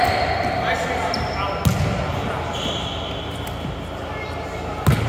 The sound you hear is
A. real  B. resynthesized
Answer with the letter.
A